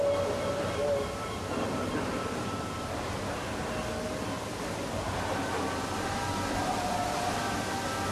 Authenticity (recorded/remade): recorded